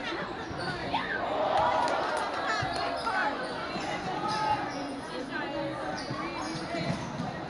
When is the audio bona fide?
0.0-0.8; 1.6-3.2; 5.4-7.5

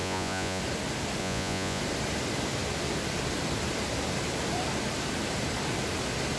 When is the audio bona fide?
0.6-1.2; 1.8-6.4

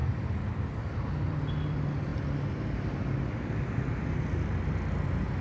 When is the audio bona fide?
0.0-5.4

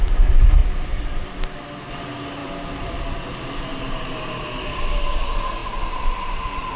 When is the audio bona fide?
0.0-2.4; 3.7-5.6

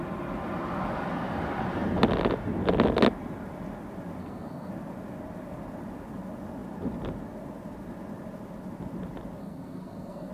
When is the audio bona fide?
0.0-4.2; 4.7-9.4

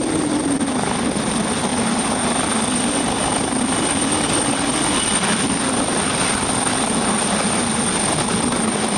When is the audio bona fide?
0.0-9.0